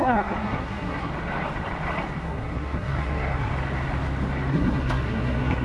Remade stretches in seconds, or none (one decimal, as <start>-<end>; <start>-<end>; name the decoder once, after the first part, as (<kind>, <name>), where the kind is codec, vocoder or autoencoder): 0.0-1.1 (codec, SNAC); 2.2-3.5; 4.5-5.6